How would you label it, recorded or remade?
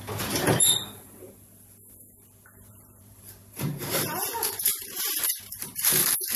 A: remade